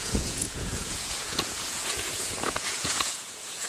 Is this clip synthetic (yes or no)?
yes